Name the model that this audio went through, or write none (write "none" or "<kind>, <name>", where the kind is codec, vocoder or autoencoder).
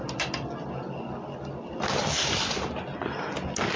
none